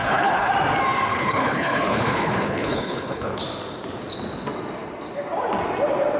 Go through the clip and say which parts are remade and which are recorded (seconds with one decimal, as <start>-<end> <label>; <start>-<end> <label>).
0.0-0.5 remade; 0.5-1.1 recorded; 1.1-3.4 remade; 3.4-6.2 recorded